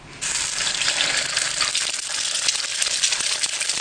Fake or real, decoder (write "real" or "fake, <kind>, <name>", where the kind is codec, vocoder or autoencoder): fake, vocoder, BigVGAN v2